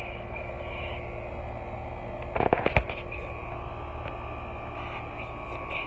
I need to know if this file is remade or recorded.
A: recorded